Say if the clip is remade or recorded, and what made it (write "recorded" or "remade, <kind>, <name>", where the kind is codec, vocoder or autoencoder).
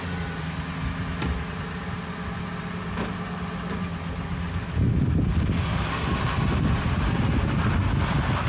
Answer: recorded